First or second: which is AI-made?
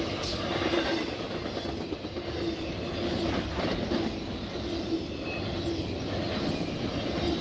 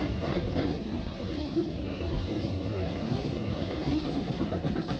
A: second